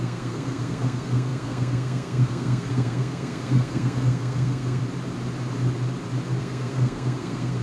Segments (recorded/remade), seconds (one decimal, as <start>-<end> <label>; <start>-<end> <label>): 0.0-4.8 remade; 4.8-6.4 recorded; 6.4-7.6 remade

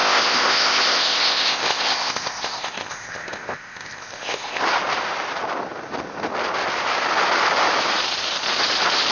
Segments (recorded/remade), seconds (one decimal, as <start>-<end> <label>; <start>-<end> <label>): 0.0-4.6 remade; 4.6-9.1 recorded

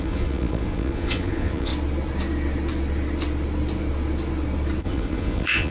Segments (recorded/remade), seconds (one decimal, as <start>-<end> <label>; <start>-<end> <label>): 0.0-1.7 remade; 1.7-4.8 recorded; 4.8-5.7 remade

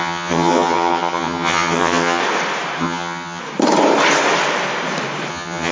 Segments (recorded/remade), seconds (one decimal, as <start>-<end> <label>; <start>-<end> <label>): 0.0-2.2 remade; 2.2-2.8 recorded; 2.8-3.4 remade; 3.4-5.3 recorded; 5.3-5.7 remade

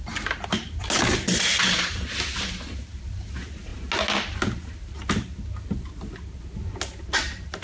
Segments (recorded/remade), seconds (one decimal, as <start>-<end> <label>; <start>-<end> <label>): 0.0-7.6 recorded

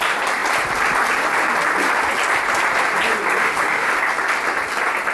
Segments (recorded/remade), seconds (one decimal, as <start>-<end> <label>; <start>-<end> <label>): 0.0-3.4 recorded; 3.4-3.9 remade; 3.9-5.1 recorded

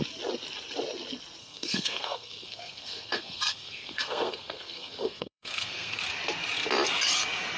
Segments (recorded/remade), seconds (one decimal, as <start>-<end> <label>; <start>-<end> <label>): 0.0-1.4 recorded; 1.4-6.0 remade; 6.0-7.6 recorded

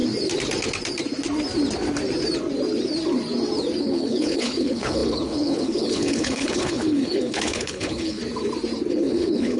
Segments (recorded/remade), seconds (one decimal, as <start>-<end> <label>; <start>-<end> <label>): 0.0-3.8 recorded; 3.8-8.2 remade; 8.2-8.9 recorded; 8.9-9.6 remade